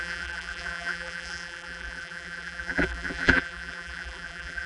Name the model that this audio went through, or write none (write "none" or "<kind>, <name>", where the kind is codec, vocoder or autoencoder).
vocoder, BigVGAN v2